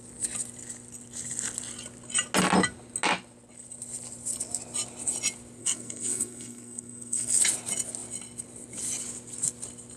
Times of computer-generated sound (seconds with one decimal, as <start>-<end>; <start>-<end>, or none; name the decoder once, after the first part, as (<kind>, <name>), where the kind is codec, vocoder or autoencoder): 5.6-7.4 (codec, SNAC)